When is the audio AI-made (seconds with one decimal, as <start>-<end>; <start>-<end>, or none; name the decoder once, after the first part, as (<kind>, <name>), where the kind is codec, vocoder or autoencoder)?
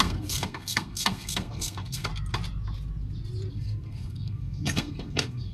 0.0-2.1 (codec, SNAC); 3.5-5.5